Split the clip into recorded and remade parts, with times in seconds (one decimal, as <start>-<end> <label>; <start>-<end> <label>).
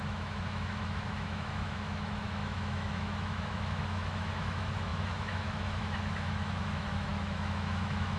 0.0-8.2 remade